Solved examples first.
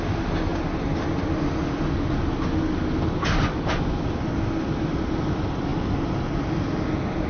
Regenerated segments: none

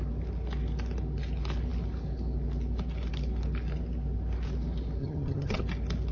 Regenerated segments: 5.0-5.6 (vocoder, HiFi-GAN)